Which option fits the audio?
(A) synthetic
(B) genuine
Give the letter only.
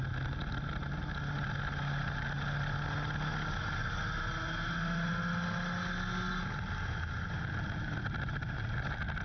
B